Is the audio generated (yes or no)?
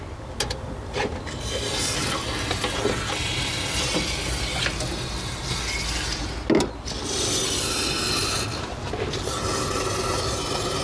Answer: no